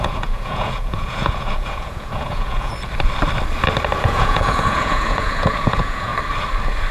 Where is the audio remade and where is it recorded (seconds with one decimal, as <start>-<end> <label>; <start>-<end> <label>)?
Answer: 0.0-2.7 remade; 2.7-4.0 recorded; 4.0-6.1 remade; 6.1-6.9 recorded